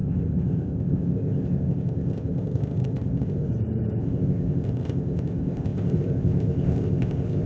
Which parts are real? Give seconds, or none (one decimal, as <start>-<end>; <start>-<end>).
3.5-4.0